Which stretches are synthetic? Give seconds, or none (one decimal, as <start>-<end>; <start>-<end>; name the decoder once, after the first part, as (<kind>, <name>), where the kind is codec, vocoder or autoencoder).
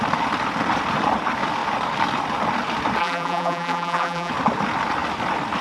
3.0-4.3 (vocoder, BigVGAN v2)